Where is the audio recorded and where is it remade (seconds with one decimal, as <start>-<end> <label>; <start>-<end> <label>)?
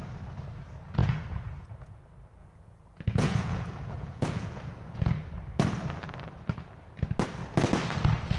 0.0-1.0 recorded; 1.0-2.0 remade; 2.0-2.4 recorded; 2.4-5.1 remade; 5.1-8.4 recorded